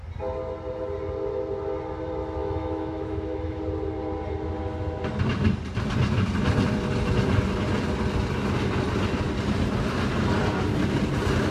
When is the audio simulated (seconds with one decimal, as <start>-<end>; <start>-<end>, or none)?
2.4-3.6